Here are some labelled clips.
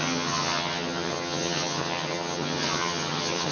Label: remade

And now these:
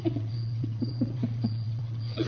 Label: remade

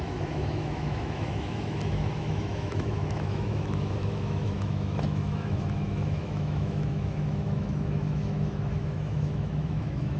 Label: remade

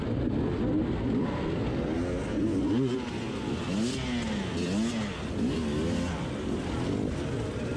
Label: recorded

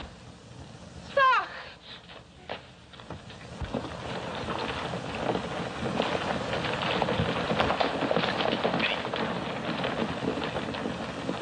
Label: recorded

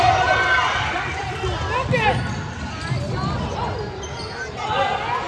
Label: recorded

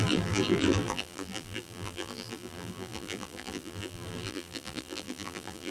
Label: remade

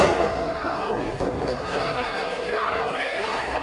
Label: remade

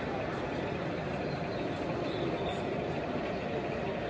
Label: remade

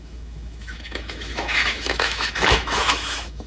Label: remade